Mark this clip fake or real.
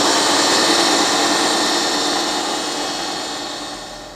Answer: real